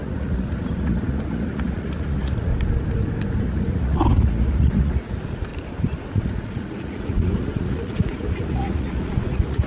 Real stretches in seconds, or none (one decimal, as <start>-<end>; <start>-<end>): 2.5-3.4; 5.5-6.1